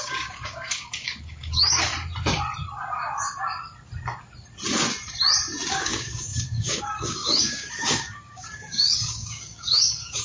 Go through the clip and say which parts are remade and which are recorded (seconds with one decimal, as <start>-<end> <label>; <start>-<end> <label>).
0.0-1.9 remade; 1.9-5.7 recorded; 5.7-10.2 remade